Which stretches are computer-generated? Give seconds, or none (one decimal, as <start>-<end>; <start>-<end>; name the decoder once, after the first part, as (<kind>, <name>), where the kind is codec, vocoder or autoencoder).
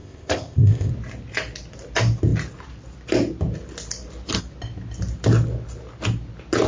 0.0-0.9 (codec, ZipCodec)